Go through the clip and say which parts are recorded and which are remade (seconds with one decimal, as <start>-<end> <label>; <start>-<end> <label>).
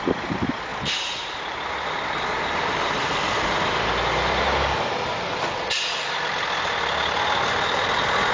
0.0-0.7 recorded; 0.7-1.7 remade; 1.7-8.3 recorded